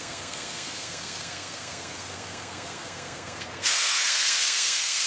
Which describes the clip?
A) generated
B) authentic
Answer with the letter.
A